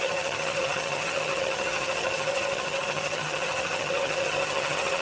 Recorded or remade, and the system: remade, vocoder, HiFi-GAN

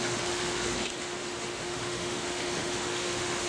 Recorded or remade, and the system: remade, autoencoder, DAC-VAE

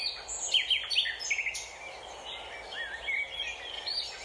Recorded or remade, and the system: recorded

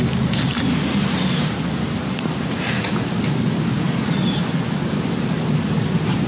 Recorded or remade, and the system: recorded